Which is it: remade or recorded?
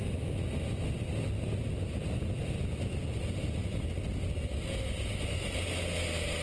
recorded